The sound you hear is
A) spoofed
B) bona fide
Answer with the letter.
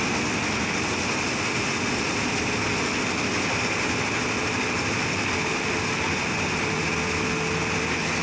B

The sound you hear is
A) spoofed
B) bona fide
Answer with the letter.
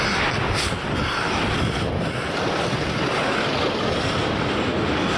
B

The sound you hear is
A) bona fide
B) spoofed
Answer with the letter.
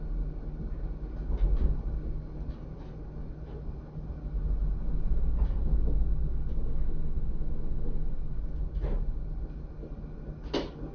A